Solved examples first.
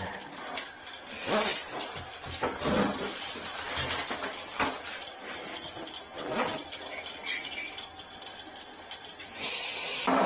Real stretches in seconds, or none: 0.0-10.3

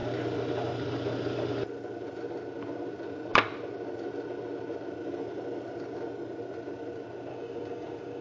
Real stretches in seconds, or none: 0.0-7.3

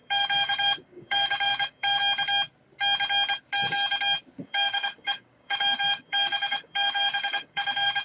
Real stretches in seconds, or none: 2.0-4.4